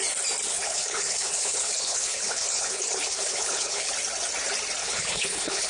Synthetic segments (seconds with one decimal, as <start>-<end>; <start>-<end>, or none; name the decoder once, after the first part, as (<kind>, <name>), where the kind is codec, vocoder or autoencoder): 0.5-3.9 (codec, HILCodec); 4.8-5.7